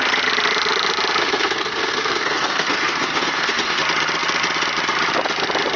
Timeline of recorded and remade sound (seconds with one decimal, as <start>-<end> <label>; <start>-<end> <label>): 0.0-1.2 recorded; 1.2-3.8 remade; 3.8-5.8 recorded

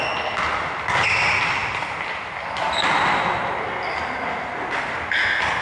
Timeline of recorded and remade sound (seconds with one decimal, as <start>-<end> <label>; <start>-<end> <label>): 0.0-5.6 recorded

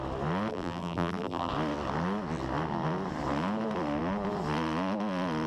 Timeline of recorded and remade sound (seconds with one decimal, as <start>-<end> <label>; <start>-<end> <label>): 0.0-0.5 recorded; 0.5-1.5 remade; 1.5-5.5 recorded

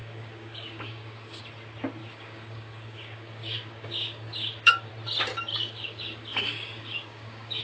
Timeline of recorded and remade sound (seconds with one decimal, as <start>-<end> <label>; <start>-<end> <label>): 0.0-1.4 remade; 1.4-2.0 recorded; 2.0-4.9 remade; 4.9-5.5 recorded; 5.5-7.6 remade